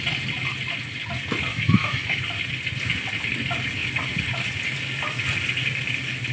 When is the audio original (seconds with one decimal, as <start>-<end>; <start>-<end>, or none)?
0.0-1.5; 2.2-6.3